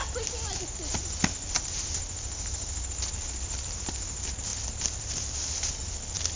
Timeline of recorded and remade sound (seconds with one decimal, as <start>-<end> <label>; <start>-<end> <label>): 0.0-6.4 recorded

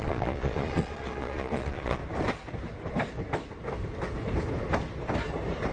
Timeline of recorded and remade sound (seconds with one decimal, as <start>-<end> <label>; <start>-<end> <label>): 0.0-2.0 remade; 2.0-5.7 recorded